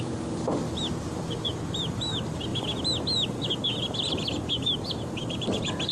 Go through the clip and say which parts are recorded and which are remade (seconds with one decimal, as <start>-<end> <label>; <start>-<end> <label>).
0.0-0.6 remade; 0.6-1.1 recorded; 1.1-2.5 remade; 2.5-3.3 recorded; 3.3-5.9 remade